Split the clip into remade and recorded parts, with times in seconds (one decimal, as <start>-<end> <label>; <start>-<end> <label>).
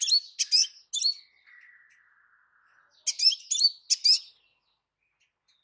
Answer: 0.0-5.6 recorded